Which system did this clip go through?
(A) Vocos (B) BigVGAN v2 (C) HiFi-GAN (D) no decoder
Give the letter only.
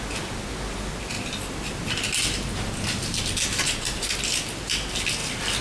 D